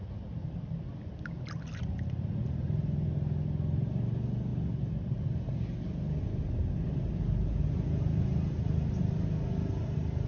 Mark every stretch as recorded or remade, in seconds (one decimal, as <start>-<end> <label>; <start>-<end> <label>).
0.0-10.3 recorded